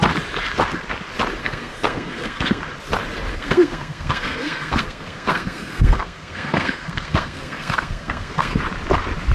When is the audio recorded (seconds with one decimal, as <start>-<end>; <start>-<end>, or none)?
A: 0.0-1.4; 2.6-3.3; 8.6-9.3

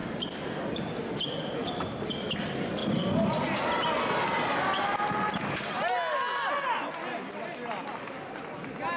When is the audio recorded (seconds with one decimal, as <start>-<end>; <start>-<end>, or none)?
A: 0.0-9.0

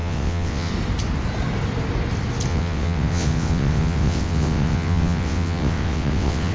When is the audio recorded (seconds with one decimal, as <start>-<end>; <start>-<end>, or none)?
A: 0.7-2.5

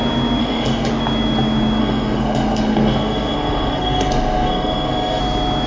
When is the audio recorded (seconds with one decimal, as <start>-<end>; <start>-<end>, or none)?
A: 0.0-0.4; 0.9-1.8; 5.2-5.7

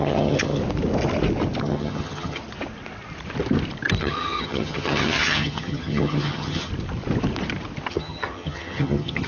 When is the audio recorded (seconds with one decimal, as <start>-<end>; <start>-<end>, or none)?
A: 0.6-1.6; 2.4-4.0; 6.7-7.9

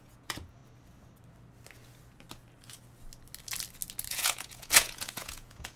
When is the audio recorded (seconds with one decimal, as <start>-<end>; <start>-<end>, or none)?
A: 0.6-4.1

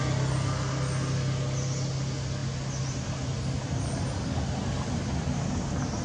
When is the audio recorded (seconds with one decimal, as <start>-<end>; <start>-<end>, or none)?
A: 0.0-6.0

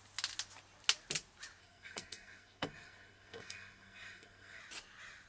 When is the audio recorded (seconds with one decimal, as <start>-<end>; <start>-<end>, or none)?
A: 0.0-1.6; 4.6-5.3